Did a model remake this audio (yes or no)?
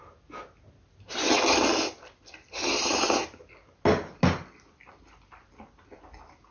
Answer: no